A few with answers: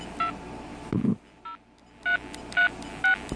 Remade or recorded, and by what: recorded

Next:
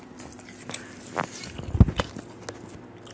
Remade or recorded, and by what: recorded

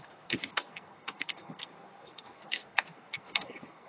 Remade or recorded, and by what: remade, codec, SNAC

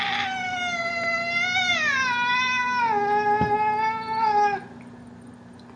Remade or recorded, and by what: recorded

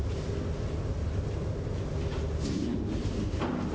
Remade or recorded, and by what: recorded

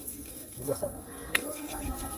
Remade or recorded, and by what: remade, codec, SNAC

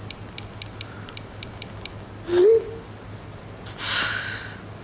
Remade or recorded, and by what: recorded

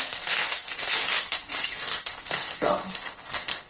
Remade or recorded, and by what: remade, codec, SNAC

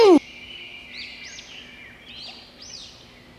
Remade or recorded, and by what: recorded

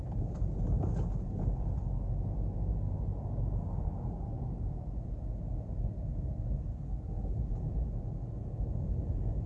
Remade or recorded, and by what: recorded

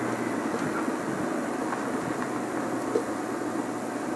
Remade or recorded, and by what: recorded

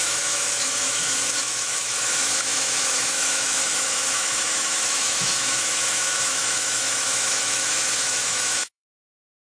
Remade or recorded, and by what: remade, autoencoder, DAC-VAE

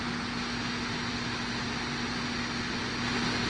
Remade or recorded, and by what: recorded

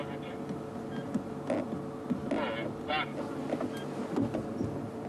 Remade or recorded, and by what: recorded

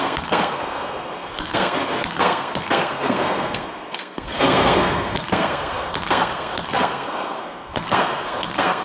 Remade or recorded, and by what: remade, codec, SNAC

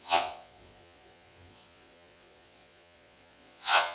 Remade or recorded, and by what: remade, vocoder, Vocos